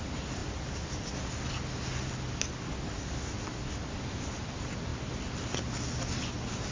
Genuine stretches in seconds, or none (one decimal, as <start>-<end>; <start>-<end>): 0.0-6.7